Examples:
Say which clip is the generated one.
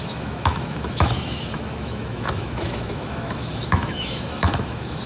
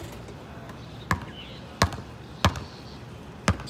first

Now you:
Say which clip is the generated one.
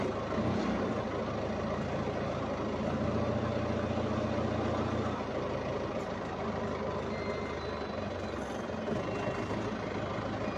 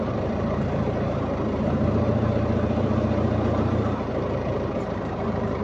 second